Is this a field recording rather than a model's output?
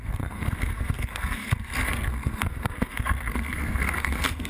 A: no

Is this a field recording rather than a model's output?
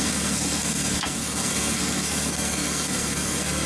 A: no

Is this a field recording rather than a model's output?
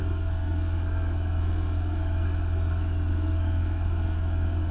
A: no